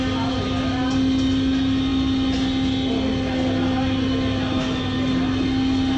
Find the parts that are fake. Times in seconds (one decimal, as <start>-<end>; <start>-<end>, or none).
none